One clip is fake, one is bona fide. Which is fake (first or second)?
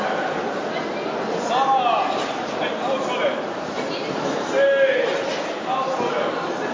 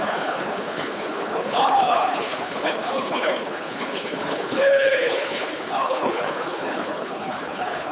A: second